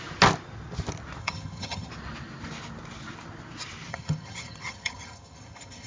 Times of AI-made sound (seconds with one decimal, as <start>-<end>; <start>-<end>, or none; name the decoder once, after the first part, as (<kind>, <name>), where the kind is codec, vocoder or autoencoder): 1.2-1.9 (vocoder, HiFi-GAN); 3.9-5.9